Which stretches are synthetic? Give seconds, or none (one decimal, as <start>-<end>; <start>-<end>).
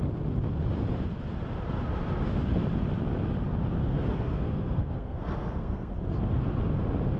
3.8-5.9